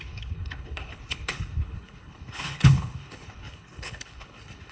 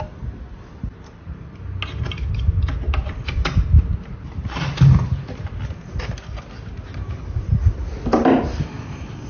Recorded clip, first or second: second